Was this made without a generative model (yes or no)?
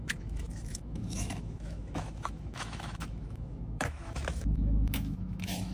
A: no